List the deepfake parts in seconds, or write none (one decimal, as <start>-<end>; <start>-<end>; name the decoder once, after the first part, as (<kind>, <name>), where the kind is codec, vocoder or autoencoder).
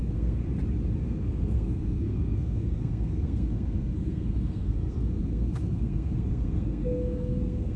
0.0-0.4 (codec, SNAC); 1.0-7.8